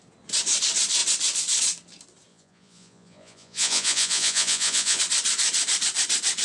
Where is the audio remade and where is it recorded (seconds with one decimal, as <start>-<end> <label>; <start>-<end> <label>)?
0.0-2.3 recorded; 2.3-5.0 remade; 5.0-6.4 recorded